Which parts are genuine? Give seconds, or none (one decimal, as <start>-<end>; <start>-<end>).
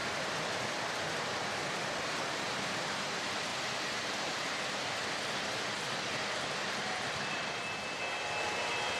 0.0-6.6; 7.6-9.0